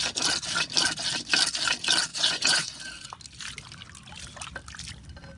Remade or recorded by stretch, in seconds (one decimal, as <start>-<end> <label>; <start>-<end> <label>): 0.0-2.1 recorded; 2.1-2.8 remade; 2.8-5.4 recorded